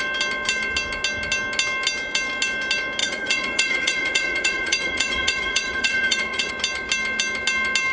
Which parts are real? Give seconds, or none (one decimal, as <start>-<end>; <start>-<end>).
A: 0.0-3.0; 6.5-7.9